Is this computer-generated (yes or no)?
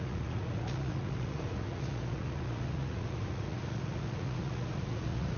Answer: yes